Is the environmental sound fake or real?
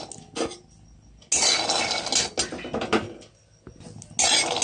real